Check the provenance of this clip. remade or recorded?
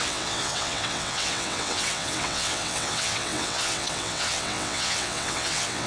remade